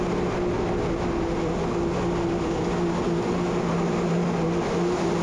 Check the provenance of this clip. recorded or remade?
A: recorded